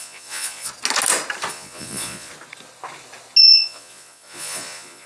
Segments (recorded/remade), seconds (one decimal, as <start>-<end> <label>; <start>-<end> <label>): 0.0-0.7 remade; 0.7-1.5 recorded; 1.5-2.3 remade; 2.3-3.4 recorded; 3.4-5.1 remade